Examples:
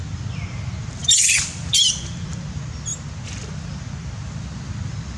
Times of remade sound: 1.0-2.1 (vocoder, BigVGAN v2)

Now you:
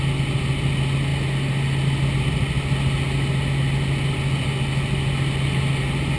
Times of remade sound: none